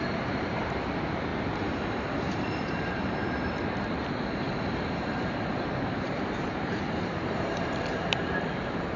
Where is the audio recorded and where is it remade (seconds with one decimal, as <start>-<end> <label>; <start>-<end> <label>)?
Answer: 0.0-9.0 remade